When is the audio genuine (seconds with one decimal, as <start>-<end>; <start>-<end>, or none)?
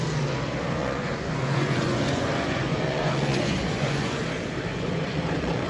0.0-0.8; 4.2-4.7